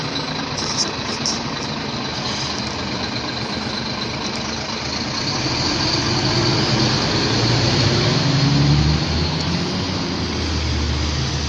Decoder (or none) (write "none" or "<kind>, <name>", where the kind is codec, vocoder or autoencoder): none